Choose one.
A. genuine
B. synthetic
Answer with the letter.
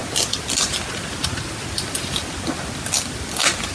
A